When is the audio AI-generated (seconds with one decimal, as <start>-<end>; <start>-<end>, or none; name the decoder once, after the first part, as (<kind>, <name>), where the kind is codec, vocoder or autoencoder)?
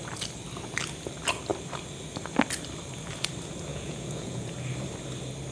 3.7-4.5 (vocoder, Vocos)